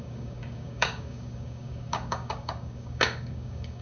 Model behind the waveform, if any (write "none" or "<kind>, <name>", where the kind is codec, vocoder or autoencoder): codec, DAC